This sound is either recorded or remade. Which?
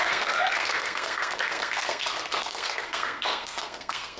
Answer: remade